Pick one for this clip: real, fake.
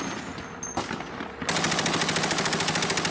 real